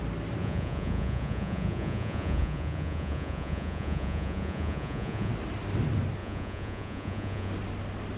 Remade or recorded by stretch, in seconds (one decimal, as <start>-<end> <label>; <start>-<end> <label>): 0.0-0.4 recorded; 0.4-5.3 remade; 5.3-6.2 recorded; 6.2-7.5 remade; 7.5-8.2 recorded